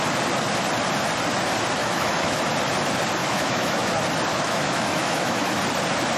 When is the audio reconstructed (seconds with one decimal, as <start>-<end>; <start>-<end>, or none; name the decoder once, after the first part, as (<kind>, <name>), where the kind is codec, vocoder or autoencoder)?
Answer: 1.8-2.4 (autoencoder, DAC-VAE); 3.2-3.9; 4.3-5.6